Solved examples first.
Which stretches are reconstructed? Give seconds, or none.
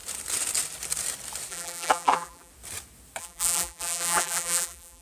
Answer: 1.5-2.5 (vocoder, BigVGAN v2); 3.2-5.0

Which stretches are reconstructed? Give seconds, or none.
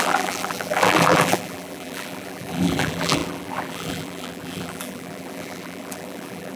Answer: 0.0-6.6 (vocoder, BigVGAN v2)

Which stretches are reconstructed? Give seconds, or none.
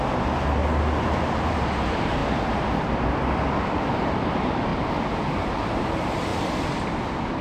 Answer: 0.0-0.6 (vocoder, BigVGAN v2); 1.5-2.2; 3.9-6.3